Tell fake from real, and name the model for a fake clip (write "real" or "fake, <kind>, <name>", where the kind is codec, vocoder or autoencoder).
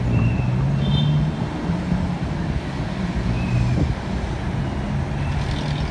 real